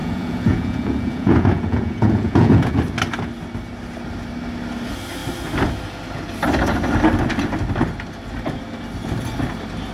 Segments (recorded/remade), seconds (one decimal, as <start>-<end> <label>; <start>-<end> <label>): 0.0-2.8 remade; 2.8-9.9 recorded